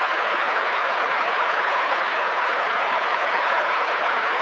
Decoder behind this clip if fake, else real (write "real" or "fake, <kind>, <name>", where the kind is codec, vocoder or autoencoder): fake, codec, HILCodec